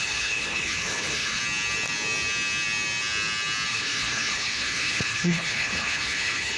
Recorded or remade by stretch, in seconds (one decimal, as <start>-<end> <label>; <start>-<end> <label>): 0.0-1.4 remade; 1.4-3.7 recorded; 3.7-6.6 remade